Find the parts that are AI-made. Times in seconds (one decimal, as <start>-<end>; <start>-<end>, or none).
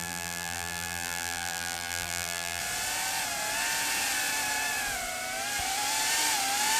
0.0-2.6